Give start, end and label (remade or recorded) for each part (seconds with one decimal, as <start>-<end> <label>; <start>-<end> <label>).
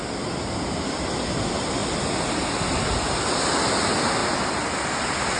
0.0-5.4 recorded